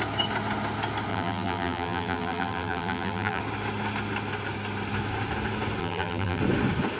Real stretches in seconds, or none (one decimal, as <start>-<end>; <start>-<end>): 0.0-1.1; 3.4-5.8; 6.4-7.0